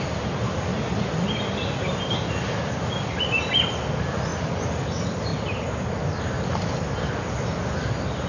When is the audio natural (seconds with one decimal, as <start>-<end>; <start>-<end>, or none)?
0.0-8.3